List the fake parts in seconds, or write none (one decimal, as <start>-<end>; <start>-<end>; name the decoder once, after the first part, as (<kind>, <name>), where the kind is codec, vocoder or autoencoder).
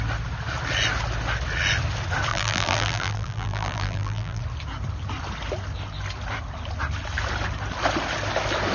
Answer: 2.3-4.4 (vocoder, BigVGAN v2)